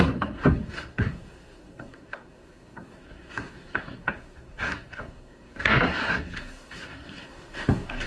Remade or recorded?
remade